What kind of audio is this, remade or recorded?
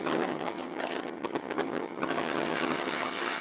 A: remade